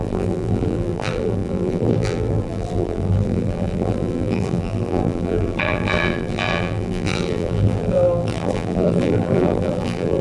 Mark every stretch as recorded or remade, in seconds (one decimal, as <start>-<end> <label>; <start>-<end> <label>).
0.0-10.2 remade

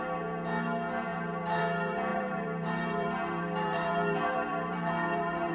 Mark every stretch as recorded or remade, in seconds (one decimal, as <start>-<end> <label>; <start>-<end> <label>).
0.0-2.1 recorded; 2.1-5.5 remade

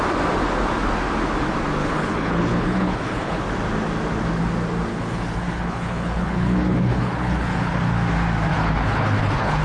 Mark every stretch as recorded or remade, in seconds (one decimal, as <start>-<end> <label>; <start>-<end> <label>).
0.0-1.8 recorded; 1.8-3.4 remade; 3.4-4.9 recorded; 4.9-7.8 remade; 7.8-8.5 recorded; 8.5-9.6 remade